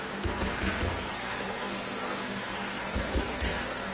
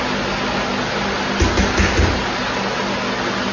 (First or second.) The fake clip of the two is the first